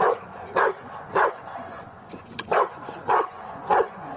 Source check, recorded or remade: remade